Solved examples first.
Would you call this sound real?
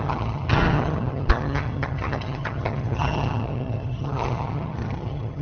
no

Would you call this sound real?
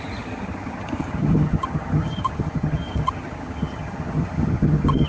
no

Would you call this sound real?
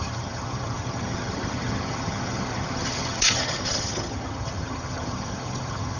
no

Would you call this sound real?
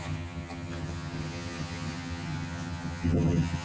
no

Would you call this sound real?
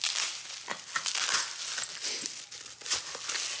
yes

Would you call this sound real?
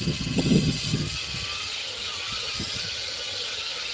no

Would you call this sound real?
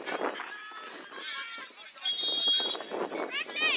yes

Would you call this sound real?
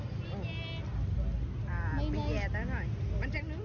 yes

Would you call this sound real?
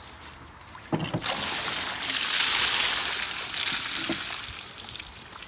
yes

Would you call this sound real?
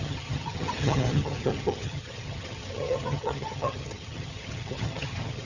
no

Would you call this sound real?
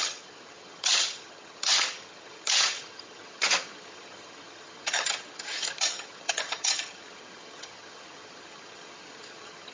no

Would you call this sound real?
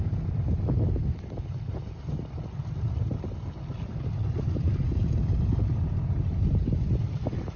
yes